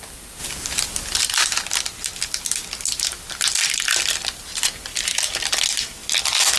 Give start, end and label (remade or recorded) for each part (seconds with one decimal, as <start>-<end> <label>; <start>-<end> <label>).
0.0-6.6 recorded